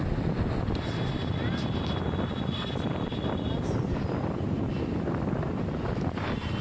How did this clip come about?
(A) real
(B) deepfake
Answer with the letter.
A